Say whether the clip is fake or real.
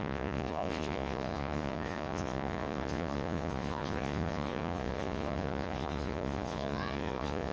fake